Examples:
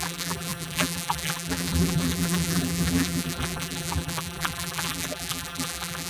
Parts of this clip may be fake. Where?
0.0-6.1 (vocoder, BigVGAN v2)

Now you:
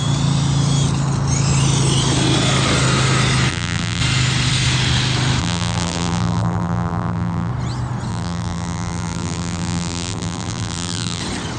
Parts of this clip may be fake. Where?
3.5-4.0 (vocoder, BigVGAN v2); 5.4-7.5; 8.1-11.2